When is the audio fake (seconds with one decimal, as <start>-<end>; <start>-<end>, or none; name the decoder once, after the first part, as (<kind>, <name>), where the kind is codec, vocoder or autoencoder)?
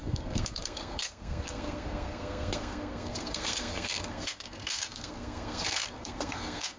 0.0-6.8 (codec, SNAC)